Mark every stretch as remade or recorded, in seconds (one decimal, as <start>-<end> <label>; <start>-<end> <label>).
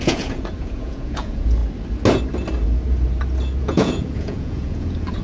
0.0-1.6 remade; 1.6-3.6 recorded; 3.6-5.2 remade